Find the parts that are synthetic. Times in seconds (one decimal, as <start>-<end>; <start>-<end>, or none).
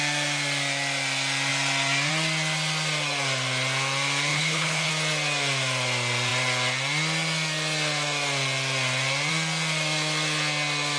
4.3-4.9